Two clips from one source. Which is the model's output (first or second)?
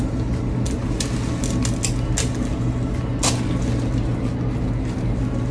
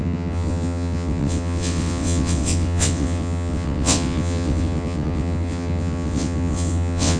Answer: second